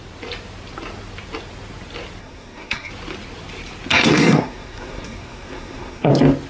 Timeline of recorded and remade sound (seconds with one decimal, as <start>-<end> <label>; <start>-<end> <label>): 0.0-2.2 recorded; 2.2-2.9 remade; 2.9-3.9 recorded; 3.9-6.1 remade; 6.1-6.5 recorded